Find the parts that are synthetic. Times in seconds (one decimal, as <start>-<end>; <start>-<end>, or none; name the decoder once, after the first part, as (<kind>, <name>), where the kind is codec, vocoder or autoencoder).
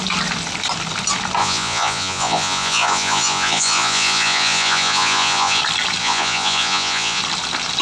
1.4-5.6 (vocoder, Vocos); 6.0-7.2